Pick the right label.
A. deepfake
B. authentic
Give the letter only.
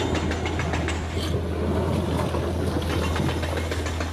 B